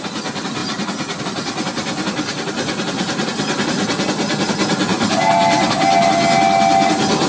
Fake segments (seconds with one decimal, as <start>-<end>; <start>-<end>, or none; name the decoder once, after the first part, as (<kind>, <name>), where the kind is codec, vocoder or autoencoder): none